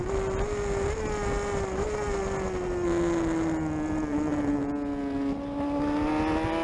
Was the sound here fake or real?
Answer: real